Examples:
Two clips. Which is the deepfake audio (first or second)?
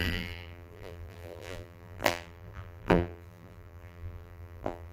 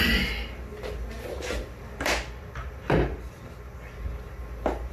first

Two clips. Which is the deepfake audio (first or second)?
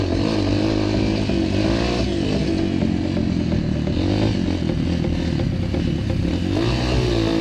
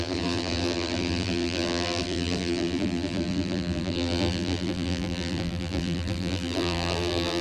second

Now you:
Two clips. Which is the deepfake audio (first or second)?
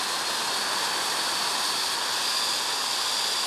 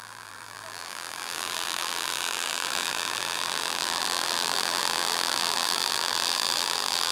second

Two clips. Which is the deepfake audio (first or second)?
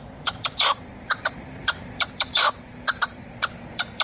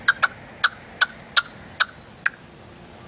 first